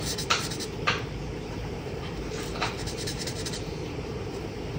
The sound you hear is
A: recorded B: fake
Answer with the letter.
B